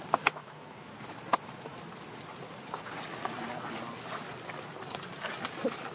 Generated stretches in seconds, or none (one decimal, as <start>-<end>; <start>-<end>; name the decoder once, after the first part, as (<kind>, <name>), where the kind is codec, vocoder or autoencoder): 0.4-0.9 (autoencoder, DAC-VAE)